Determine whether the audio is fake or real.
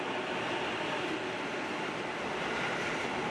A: real